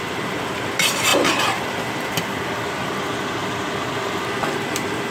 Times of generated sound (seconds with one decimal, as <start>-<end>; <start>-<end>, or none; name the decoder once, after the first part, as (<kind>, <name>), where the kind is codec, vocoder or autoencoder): none

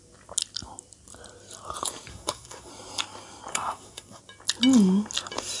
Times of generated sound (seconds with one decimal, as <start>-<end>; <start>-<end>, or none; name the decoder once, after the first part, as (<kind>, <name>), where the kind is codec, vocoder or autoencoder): 2.1-2.7 (codec, SNAC); 3.5-4.2

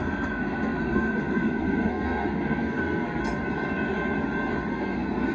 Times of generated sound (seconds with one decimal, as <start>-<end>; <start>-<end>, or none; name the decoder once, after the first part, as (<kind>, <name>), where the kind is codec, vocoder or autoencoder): 0.0-3.2 (codec, SNAC); 4.7-5.3

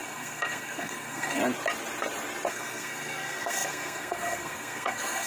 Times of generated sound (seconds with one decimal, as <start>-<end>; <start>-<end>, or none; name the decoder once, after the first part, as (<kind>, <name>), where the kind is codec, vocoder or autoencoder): 0.0-1.4 (codec, SNAC); 2.5-5.3

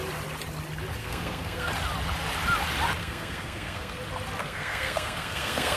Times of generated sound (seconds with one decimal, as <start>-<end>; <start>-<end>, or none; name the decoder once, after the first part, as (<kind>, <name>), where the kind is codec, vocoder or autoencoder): 1.0-1.7 (codec, SNAC); 3.0-4.0; 4.4-5.8

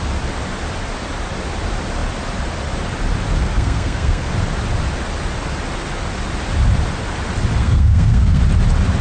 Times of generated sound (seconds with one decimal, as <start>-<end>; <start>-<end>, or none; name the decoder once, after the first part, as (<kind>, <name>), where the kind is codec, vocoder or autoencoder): 3.4-4.3 (codec, SNAC); 7.6-8.4